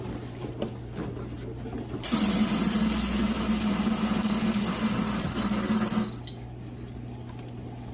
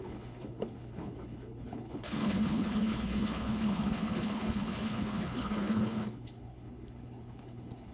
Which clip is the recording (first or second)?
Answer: first